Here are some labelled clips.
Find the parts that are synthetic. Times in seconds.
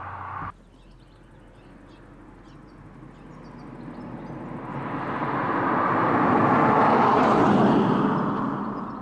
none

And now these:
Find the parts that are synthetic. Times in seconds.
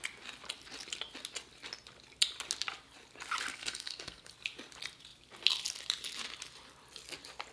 3.5-4.3 (codec, SNAC)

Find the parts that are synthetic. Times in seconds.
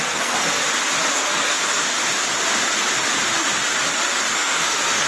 0.0-0.6 (codec, SNAC); 1.1-2.0; 4.3-5.1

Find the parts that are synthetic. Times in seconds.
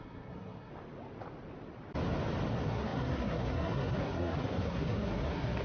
0.0-0.7 (codec, SNAC); 2.5-5.6